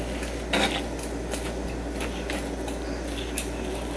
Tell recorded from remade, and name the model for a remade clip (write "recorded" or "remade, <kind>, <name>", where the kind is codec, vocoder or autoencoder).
recorded